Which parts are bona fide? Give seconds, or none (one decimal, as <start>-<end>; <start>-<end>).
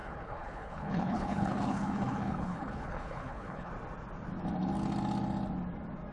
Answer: 3.7-6.1